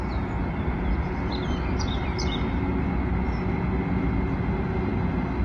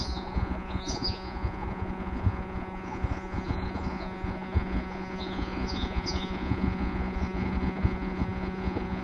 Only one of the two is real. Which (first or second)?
first